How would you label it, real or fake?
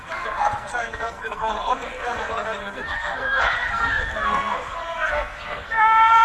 fake